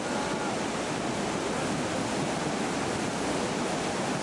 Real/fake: real